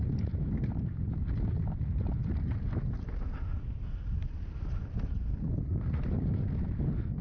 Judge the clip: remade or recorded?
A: recorded